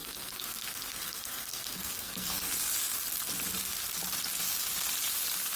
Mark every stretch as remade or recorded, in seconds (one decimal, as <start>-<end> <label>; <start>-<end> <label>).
0.0-2.5 remade; 2.5-5.6 recorded